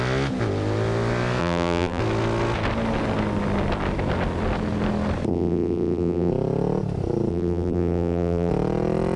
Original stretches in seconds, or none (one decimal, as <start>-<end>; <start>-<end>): 0.0-1.4; 2.0-5.3; 6.3-7.3; 8.5-9.2